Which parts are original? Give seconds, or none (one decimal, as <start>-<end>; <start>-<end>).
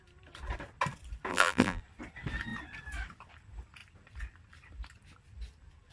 0.0-1.3; 1.8-5.9